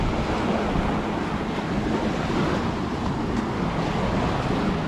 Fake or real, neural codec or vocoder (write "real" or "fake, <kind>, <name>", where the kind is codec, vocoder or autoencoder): real